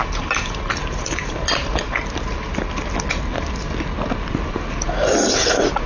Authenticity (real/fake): real